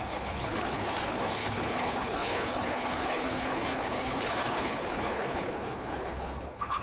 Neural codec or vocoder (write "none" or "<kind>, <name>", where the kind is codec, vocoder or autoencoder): codec, HILCodec